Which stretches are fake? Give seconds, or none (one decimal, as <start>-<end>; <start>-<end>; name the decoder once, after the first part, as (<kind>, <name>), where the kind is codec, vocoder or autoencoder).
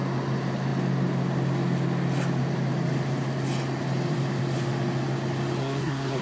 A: 5.6-6.2 (codec, SNAC)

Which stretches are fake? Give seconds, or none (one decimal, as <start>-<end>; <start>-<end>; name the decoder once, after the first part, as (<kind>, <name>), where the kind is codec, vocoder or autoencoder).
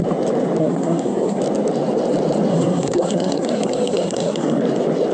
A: 0.6-1.4 (codec, SNAC); 2.5-4.6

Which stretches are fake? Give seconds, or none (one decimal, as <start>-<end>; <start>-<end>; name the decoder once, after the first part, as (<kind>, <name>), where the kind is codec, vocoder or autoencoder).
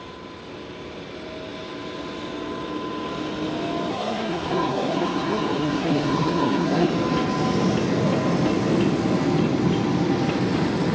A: 3.9-6.9 (codec, SNAC)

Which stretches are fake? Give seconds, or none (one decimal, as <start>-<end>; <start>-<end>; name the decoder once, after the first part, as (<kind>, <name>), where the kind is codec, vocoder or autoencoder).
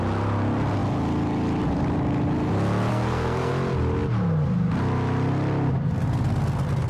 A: 2.9-3.5 (codec, SNAC)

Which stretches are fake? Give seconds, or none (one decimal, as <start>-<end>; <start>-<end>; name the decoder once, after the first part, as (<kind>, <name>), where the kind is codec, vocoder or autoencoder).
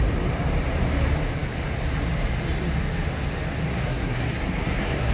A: 3.6-5.1 (codec, SNAC)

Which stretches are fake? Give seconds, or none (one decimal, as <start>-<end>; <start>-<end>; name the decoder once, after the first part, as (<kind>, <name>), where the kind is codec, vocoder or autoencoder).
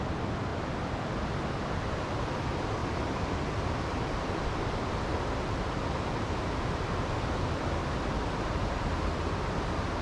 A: none